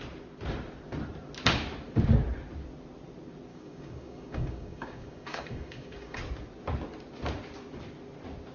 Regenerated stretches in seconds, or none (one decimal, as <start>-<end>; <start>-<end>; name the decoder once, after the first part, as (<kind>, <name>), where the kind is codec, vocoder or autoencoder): 3.5-6.2 (codec, DAC)